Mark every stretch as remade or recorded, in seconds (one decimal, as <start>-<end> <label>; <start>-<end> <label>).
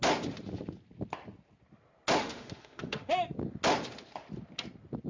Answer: 0.0-2.2 recorded; 2.2-3.1 remade; 3.1-5.1 recorded